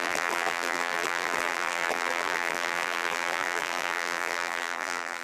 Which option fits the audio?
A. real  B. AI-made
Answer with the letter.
B